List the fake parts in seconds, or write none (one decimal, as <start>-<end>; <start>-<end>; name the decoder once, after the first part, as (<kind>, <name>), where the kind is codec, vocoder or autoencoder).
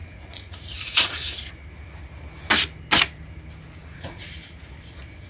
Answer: 0.0-1.5 (vocoder, Vocos); 3.8-4.3